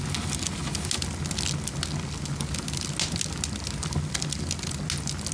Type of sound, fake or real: real